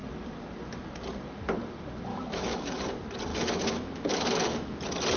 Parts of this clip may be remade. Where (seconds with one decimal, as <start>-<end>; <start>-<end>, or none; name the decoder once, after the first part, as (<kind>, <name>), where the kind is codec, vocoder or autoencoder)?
2.1-2.8 (autoencoder, DAC-VAE); 3.3-4.8